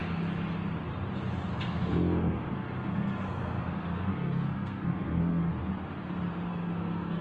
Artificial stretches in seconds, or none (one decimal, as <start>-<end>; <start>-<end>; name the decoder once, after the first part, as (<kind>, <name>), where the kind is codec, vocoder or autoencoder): 1.5-5.5 (codec, SNAC); 6.5-7.2